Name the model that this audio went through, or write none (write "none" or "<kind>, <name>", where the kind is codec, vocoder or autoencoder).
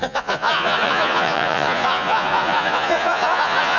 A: vocoder, Vocos